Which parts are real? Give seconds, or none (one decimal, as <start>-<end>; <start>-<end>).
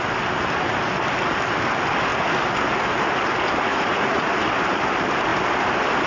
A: 0.0-3.7; 4.3-6.1